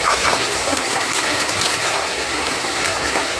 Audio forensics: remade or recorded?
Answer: remade